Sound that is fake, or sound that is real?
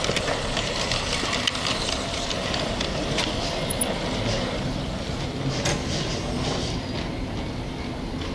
real